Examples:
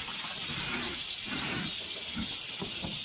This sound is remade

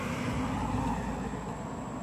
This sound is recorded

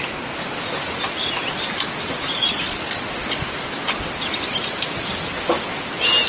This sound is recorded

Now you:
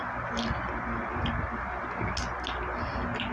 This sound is recorded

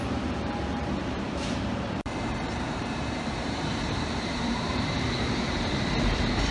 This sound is remade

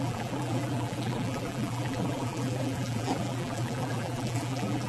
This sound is remade